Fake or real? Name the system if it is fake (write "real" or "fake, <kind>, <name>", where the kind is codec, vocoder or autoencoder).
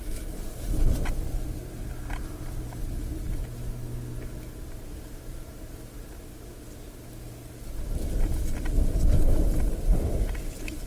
real